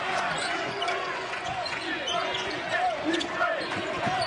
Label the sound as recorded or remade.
remade